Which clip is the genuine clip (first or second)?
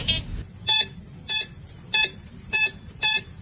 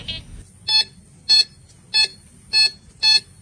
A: second